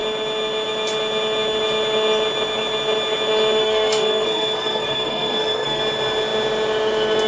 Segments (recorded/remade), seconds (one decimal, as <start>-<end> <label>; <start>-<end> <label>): 0.0-3.6 recorded; 3.6-5.8 remade; 5.8-7.3 recorded